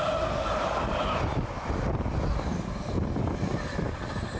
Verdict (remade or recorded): recorded